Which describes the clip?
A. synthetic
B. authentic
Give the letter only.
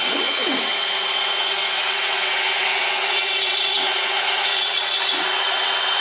A